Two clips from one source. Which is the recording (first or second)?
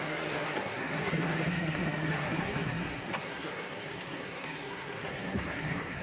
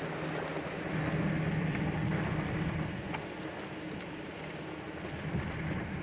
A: second